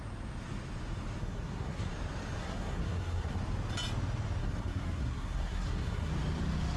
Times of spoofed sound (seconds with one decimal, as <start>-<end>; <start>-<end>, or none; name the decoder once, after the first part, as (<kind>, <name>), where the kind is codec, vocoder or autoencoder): 1.2-1.9 (codec, SNAC); 2.4-3.4; 4.4-6.1